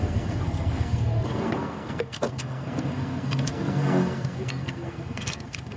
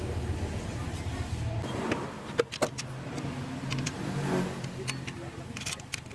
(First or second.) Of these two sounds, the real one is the second